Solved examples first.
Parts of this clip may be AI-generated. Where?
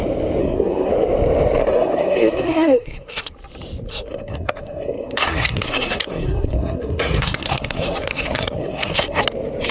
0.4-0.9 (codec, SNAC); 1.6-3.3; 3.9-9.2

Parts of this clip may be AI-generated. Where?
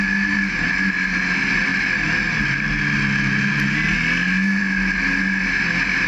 none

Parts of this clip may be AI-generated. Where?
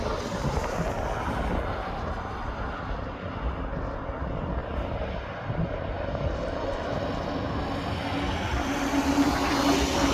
none